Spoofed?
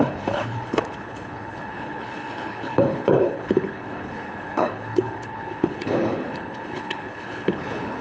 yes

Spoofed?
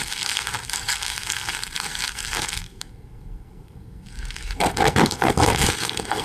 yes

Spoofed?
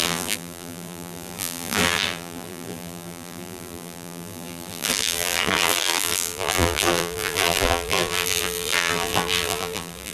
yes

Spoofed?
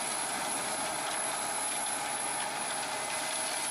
no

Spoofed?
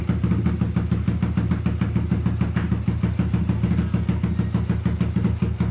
no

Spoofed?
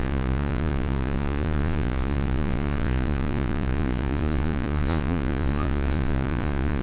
yes